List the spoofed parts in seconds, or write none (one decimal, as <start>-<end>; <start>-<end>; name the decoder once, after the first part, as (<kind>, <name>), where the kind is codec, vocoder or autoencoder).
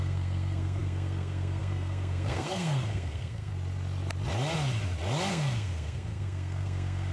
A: 0.0-3.5 (codec, SNAC); 5.3-7.1